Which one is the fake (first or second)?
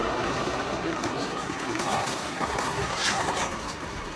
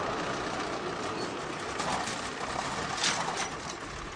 first